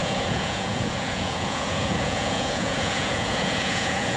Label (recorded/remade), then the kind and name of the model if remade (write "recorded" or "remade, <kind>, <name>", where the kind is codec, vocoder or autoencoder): remade, vocoder, Vocos